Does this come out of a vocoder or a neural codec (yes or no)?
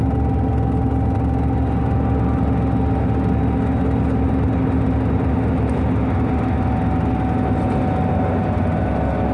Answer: no